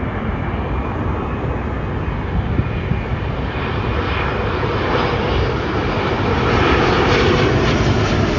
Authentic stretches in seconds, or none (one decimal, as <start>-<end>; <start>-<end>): 0.0-8.4

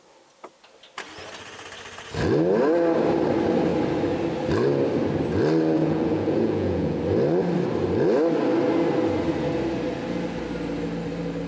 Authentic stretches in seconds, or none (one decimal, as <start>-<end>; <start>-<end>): 0.0-5.8; 7.0-11.5

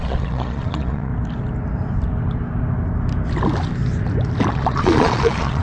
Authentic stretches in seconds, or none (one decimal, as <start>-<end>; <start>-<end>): 1.1-4.5

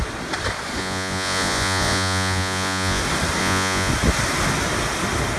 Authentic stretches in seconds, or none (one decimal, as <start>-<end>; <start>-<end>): 0.0-0.8; 3.0-3.4; 3.9-5.4

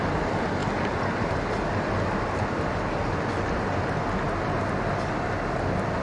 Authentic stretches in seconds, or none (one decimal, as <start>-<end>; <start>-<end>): 0.0-6.0